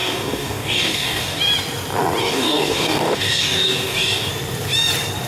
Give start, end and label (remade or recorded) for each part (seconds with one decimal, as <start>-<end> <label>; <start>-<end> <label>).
0.0-1.4 remade; 1.4-2.2 recorded; 2.2-4.3 remade; 4.3-5.3 recorded